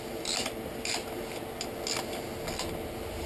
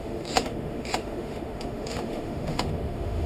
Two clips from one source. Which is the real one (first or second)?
first